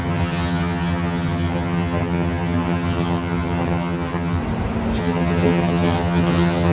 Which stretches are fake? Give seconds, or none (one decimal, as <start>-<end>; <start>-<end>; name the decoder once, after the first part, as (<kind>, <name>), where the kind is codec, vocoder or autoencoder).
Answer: 0.0-4.4 (vocoder, HiFi-GAN); 5.0-6.7